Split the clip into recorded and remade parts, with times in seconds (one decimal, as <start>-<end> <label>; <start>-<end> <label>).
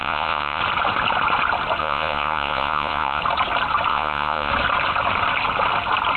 0.0-0.6 remade; 0.6-1.8 recorded; 1.8-3.2 remade; 3.2-3.9 recorded; 3.9-4.5 remade; 4.5-6.2 recorded